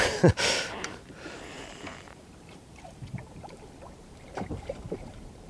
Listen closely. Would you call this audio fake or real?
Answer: fake